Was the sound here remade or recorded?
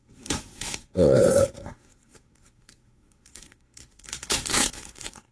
remade